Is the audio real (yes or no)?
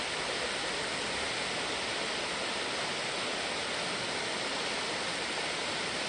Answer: yes